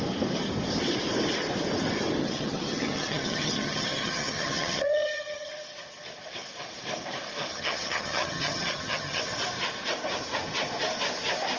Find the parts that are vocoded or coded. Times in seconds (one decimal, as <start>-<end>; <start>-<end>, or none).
2.2-5.5; 7.5-9.2